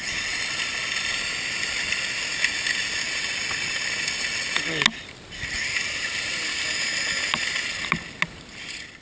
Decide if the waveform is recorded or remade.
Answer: recorded